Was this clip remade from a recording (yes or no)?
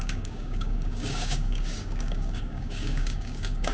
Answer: yes